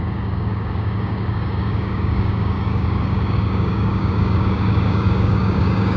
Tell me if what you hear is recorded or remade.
remade